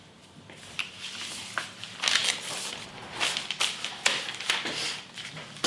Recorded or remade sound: recorded